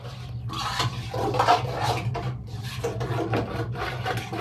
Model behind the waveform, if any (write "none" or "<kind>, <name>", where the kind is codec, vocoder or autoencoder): none